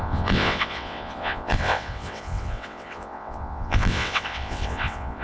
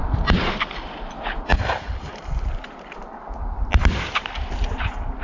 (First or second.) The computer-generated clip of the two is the first